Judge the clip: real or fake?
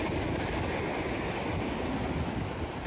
real